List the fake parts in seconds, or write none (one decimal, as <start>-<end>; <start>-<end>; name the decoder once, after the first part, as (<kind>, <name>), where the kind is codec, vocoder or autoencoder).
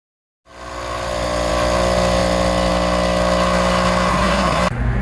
4.1-4.6 (codec, SNAC)